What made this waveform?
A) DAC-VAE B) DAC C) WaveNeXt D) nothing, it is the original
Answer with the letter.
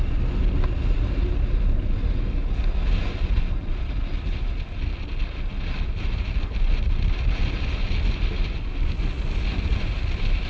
D